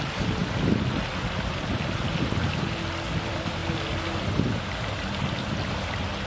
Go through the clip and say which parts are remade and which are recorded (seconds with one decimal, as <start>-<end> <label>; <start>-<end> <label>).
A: 0.0-6.3 recorded